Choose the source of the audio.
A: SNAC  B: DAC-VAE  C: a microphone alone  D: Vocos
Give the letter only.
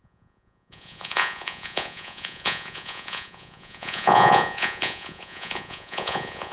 D